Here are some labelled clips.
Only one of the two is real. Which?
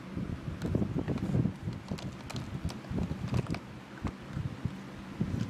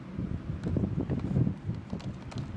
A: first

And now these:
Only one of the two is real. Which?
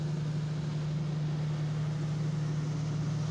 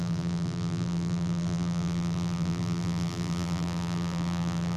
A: first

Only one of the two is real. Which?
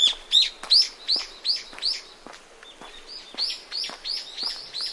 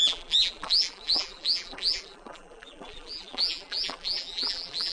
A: first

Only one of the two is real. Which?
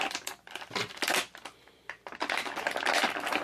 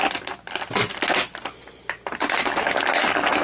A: second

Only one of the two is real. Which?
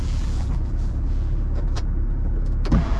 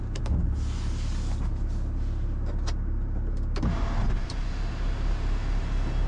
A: second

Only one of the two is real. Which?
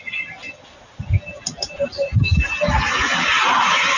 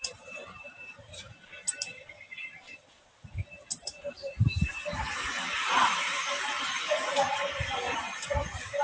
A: first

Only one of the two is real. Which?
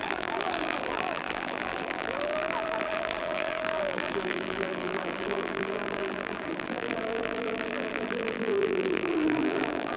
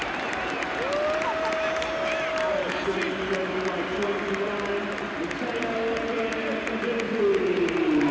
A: second